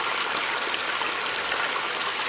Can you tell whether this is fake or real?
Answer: real